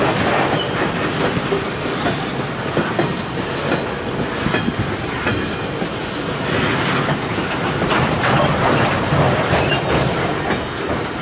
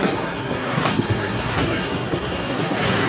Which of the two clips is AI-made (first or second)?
second